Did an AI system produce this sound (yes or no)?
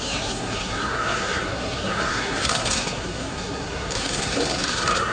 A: yes